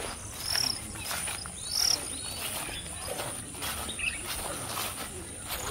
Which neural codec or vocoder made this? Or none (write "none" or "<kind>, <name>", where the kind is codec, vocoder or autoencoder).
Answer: none